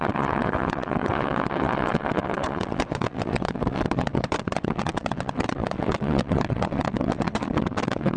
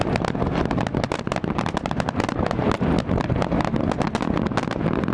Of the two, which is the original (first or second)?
second